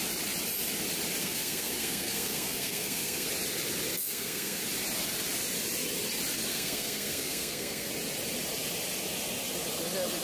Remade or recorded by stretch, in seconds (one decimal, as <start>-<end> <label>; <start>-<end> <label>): 0.0-1.2 recorded; 1.2-3.3 remade; 3.3-3.9 recorded; 3.9-4.6 remade; 4.6-6.5 recorded; 6.5-7.9 remade; 7.9-10.2 recorded